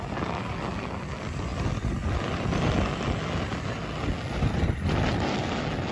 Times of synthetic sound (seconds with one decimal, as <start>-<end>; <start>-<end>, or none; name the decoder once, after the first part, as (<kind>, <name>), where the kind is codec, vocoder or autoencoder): none